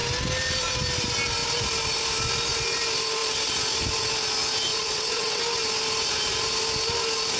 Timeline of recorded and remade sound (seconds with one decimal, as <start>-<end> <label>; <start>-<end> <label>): 0.0-4.7 recorded; 4.7-5.4 remade; 5.4-7.4 recorded